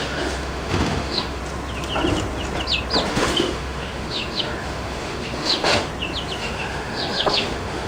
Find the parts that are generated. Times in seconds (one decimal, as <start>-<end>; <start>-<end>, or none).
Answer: 0.0-1.4; 3.1-5.9; 6.4-7.9